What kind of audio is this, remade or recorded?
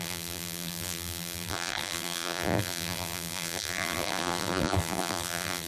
remade